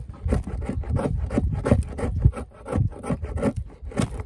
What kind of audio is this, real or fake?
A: real